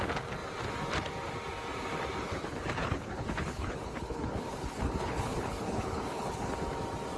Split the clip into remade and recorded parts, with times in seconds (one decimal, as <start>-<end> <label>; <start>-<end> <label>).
0.0-2.2 recorded; 2.2-6.5 remade; 6.5-7.2 recorded